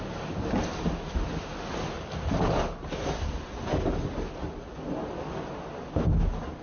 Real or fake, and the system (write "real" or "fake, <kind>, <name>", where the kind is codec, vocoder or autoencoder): real